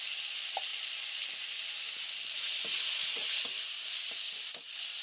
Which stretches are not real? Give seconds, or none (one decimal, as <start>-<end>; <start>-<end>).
none